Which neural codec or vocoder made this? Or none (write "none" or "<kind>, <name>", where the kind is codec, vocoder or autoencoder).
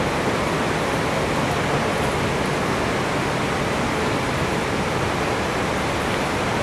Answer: none